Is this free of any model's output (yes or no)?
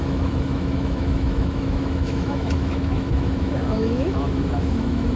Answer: no